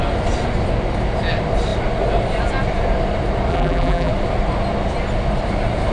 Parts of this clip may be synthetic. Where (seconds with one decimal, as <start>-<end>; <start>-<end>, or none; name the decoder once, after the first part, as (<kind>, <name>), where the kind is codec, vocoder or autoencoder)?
3.5-4.1 (vocoder, BigVGAN v2)